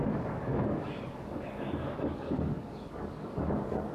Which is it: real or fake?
fake